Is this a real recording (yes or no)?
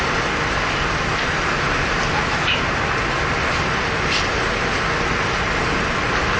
yes